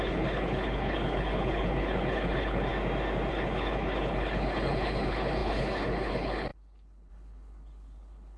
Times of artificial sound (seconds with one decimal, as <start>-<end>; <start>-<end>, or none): 0.0-2.7; 3.3-8.4